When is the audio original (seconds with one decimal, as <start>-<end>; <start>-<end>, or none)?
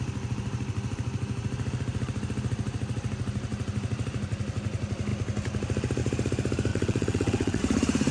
0.0-6.7; 7.6-8.1